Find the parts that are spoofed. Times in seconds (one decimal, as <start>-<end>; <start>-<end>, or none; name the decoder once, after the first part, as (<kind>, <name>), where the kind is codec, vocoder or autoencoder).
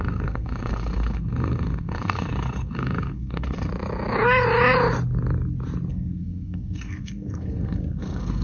0.0-3.7 (codec, SNAC); 5.9-8.4